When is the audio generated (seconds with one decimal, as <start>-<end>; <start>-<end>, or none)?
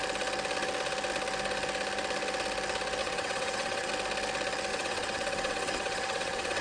3.0-3.9; 4.7-6.6